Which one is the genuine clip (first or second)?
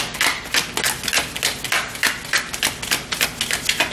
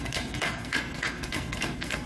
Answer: first